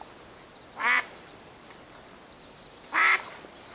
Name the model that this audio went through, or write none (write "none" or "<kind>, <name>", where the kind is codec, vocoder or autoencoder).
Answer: none